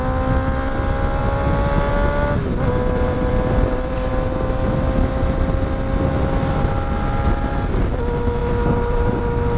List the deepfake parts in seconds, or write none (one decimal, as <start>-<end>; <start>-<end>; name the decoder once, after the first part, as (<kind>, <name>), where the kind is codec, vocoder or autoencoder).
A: 2.5-4.1 (vocoder, BigVGAN v2); 8.4-9.2